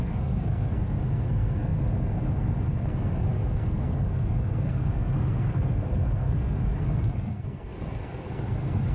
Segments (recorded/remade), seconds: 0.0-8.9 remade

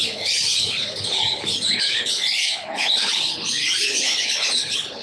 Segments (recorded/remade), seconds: 0.0-5.0 remade

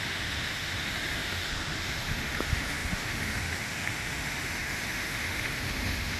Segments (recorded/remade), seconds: 0.0-6.2 remade